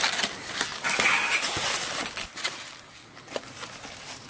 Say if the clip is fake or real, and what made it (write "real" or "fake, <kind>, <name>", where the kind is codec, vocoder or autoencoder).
real